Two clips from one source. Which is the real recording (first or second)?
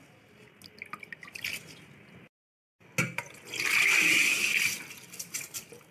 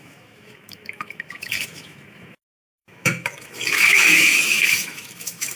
first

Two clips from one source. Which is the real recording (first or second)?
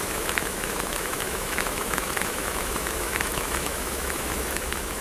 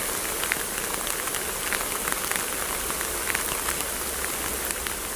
second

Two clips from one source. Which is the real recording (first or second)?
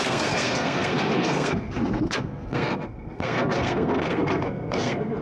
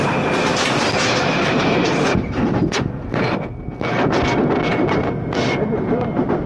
second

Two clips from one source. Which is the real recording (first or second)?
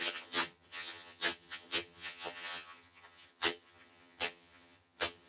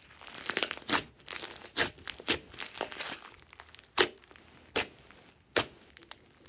second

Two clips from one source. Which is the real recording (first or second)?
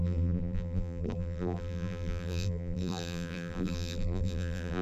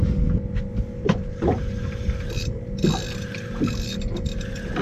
second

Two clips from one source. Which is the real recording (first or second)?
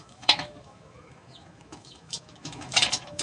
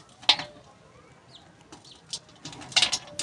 second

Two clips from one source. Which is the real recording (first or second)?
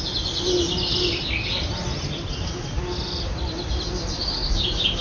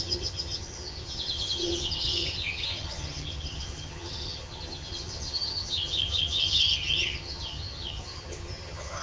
first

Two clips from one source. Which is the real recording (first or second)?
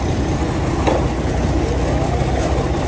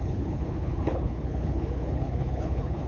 first